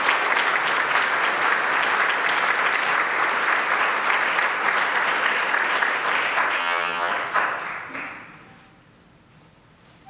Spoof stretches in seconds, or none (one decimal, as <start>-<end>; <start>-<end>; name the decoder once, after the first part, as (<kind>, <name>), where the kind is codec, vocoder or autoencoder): 6.6-7.1 (vocoder, HiFi-GAN)